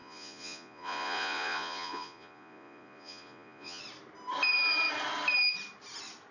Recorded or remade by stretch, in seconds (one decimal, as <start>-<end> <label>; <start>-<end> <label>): 0.0-3.8 remade; 3.8-6.3 recorded